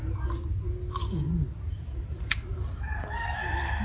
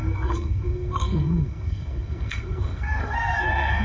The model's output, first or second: second